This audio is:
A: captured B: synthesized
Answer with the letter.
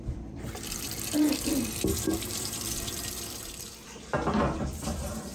B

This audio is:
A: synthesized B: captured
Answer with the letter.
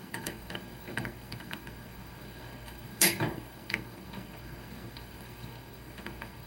A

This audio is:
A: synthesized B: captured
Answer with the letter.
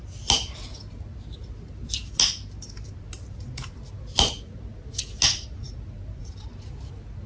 B